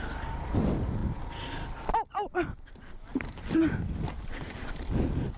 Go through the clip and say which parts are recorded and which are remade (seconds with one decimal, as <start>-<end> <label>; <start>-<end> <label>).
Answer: 0.0-5.4 recorded